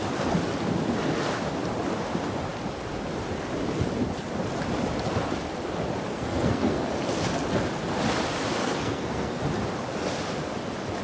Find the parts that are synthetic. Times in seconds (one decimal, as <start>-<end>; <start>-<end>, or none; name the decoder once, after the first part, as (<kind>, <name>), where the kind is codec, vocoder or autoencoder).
6.1-6.9 (codec, SNAC); 8.6-9.4